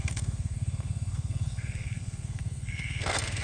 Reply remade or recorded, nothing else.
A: remade